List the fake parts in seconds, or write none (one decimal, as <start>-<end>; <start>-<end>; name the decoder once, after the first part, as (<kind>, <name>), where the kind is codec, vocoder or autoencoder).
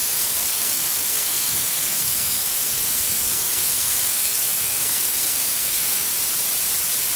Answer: 0.0-6.1 (codec, SNAC)